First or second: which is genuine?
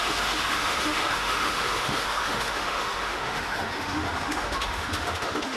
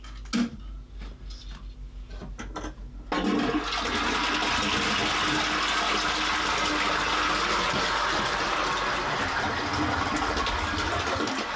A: second